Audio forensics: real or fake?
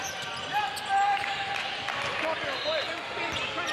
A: real